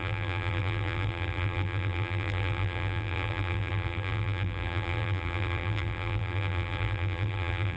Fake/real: fake